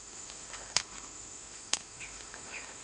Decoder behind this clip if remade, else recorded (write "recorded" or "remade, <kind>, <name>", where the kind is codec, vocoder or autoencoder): remade, autoencoder, DAC-VAE